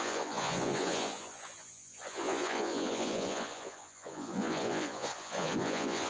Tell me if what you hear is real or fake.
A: fake